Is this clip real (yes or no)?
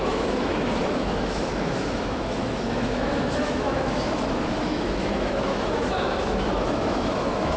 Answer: no